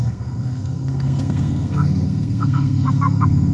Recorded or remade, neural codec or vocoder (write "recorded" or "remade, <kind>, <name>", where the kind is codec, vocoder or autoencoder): remade, codec, SNAC